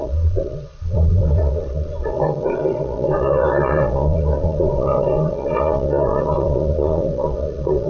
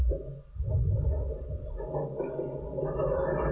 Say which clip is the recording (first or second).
second